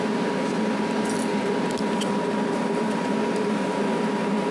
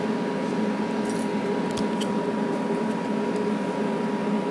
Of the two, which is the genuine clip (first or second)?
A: second